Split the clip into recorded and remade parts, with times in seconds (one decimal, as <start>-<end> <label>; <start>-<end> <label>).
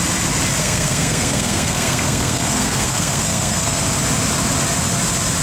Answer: 0.0-0.6 recorded; 0.6-3.8 remade; 3.8-5.4 recorded